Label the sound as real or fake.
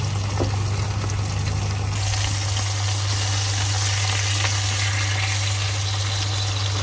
real